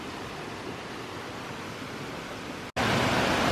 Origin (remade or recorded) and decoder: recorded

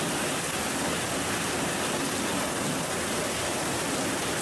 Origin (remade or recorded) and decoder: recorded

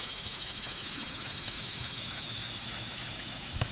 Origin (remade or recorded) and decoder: remade, autoencoder, DAC-VAE